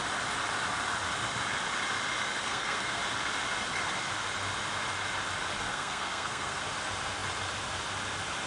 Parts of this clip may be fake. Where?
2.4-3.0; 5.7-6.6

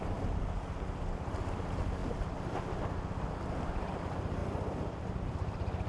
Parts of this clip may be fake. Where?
0.0-2.0; 3.9-5.9

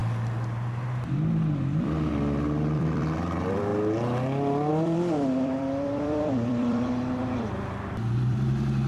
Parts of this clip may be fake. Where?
2.1-3.7; 4.7-8.9